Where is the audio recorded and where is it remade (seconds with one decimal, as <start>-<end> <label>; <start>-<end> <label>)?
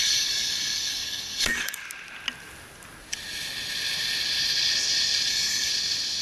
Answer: 0.0-1.8 remade; 1.8-5.3 recorded; 5.3-5.7 remade; 5.7-6.2 recorded